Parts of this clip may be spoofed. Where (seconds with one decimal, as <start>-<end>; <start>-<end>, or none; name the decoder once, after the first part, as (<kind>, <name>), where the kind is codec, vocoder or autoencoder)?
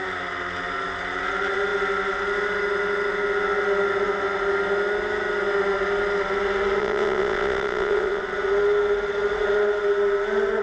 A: 6.8-8.2 (vocoder, Vocos)